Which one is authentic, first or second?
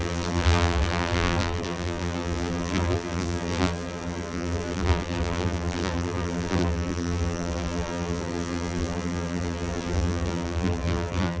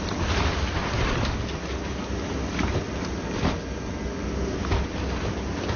second